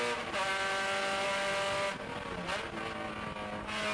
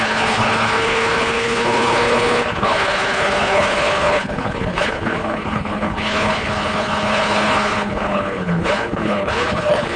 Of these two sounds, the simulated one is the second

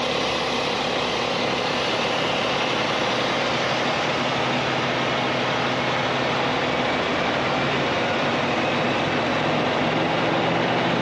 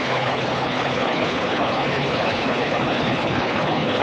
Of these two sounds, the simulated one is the second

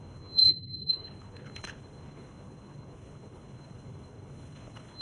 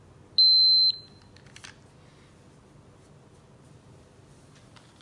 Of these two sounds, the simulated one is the first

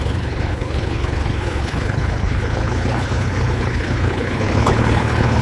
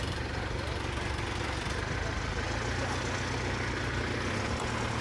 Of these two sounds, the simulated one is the first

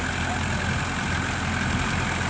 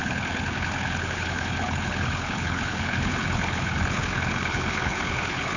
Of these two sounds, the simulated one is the second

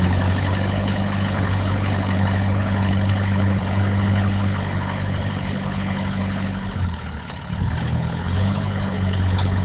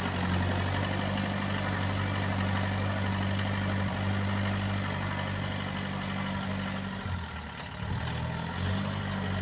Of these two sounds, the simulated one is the first